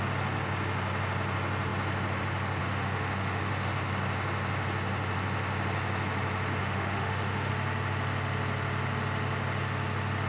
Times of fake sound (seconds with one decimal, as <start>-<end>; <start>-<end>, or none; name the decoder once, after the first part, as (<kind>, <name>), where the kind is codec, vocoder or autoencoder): 2.6-3.5 (autoencoder, DAC-VAE); 6.6-7.5